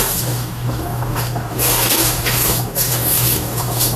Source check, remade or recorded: remade